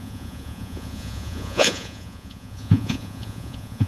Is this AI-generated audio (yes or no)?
yes